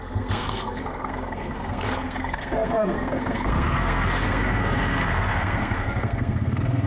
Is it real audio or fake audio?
fake